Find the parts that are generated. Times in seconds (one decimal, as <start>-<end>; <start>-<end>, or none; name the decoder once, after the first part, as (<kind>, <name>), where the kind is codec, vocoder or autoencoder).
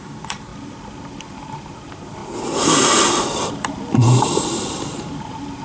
0.0-0.5 (vocoder, BigVGAN v2); 1.1-2.2; 3.5-5.6